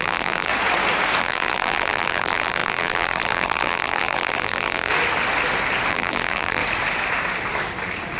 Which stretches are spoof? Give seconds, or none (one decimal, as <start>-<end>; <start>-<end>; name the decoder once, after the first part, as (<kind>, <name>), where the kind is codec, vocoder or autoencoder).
0.0-0.5 (vocoder, BigVGAN v2); 1.2-4.9; 5.9-6.6